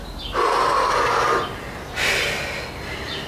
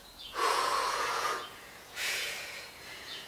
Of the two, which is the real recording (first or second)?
first